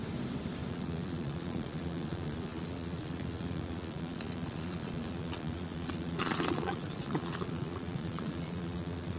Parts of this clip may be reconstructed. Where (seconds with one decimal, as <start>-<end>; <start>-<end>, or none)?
0.7-9.2